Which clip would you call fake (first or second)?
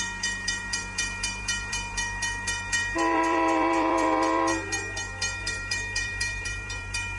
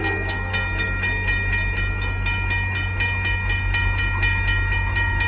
first